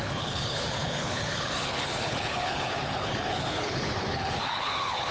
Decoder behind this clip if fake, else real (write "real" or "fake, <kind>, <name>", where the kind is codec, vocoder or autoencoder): fake, codec, HILCodec